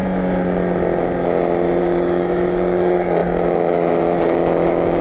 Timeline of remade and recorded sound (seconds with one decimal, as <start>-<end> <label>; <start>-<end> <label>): 0.0-1.8 recorded; 1.8-5.0 remade